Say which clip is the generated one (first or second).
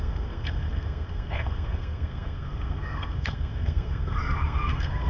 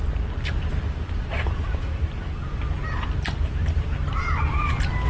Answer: first